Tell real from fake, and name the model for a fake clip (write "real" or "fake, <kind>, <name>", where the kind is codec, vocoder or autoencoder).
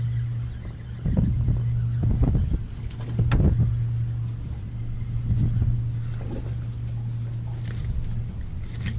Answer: real